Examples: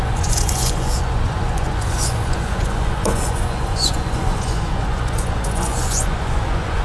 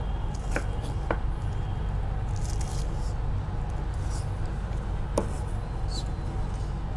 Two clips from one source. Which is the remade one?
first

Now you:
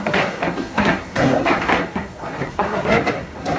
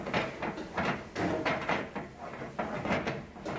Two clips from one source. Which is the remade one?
first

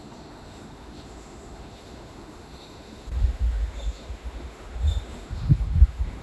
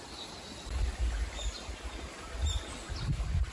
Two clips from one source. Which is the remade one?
first